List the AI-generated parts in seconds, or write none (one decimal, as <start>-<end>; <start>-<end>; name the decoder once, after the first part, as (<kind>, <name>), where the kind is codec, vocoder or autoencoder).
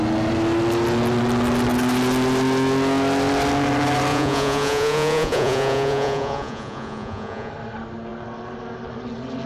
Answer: 4.1-7.5 (vocoder, Vocos)